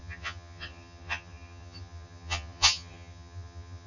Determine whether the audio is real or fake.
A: fake